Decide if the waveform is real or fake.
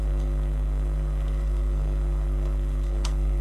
fake